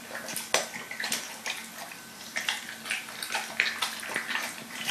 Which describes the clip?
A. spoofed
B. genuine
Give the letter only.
B